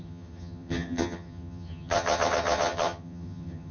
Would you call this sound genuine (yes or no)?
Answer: no